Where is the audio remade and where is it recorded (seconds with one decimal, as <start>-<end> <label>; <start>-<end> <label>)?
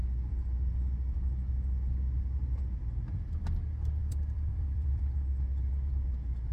0.0-4.0 recorded; 4.0-5.0 remade; 5.0-6.5 recorded